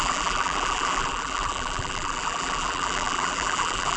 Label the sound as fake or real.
fake